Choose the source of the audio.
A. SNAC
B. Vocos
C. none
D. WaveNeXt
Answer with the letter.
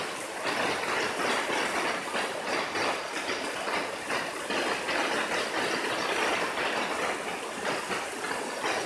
C